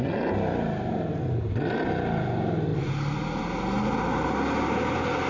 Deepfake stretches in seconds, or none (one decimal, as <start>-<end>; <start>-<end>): none